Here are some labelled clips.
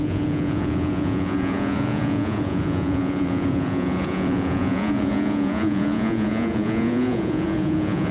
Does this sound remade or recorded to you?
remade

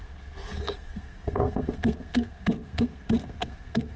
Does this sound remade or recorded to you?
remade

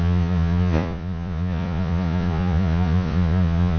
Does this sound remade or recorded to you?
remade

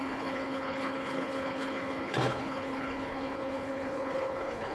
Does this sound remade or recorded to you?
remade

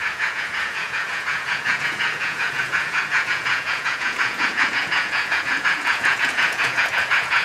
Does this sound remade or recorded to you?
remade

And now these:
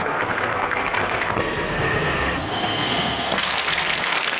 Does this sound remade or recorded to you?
remade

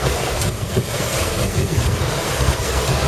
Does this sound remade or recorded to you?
remade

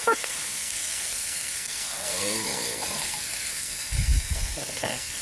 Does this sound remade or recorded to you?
remade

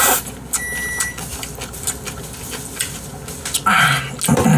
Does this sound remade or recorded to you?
recorded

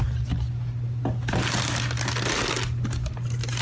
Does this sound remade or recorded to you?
recorded